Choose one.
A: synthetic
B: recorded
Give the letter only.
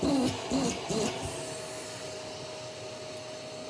B